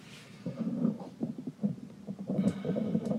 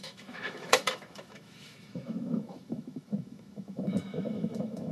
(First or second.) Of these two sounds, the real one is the first